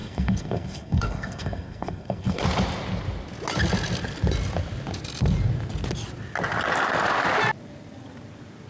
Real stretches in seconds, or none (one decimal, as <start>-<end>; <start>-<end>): 2.4-8.7